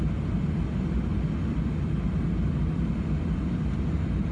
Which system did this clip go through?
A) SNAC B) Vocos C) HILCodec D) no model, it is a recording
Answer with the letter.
D